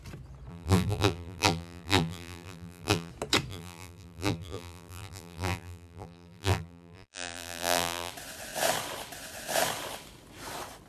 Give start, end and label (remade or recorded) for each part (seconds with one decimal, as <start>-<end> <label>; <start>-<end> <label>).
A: 0.0-0.5 recorded; 0.5-3.1 remade; 3.1-3.5 recorded; 3.5-8.1 remade; 8.1-10.9 recorded